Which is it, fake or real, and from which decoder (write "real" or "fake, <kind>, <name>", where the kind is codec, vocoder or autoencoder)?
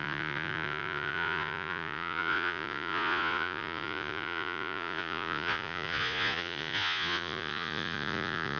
fake, vocoder, Vocos